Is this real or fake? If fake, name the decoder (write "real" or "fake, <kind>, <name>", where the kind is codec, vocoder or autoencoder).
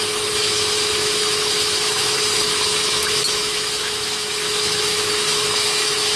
fake, autoencoder, DAC-VAE